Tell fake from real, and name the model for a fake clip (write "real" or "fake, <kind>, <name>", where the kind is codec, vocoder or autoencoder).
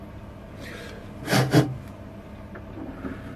real